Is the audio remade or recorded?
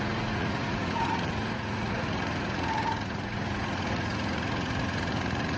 remade